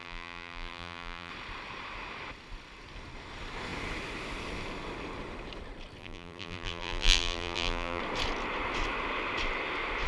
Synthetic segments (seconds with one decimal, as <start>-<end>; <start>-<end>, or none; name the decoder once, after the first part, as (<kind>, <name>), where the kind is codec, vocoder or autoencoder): 0.0-1.3 (vocoder, BigVGAN v2); 6.0-8.0